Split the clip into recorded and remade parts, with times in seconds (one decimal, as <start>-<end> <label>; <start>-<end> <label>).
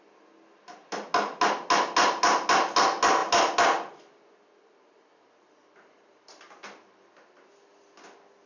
0.0-8.5 recorded